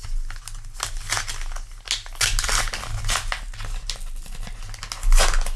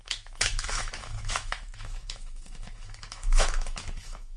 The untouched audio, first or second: first